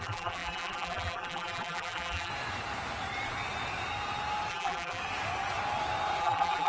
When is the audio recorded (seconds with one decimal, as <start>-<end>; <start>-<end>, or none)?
2.3-4.5; 5.0-6.2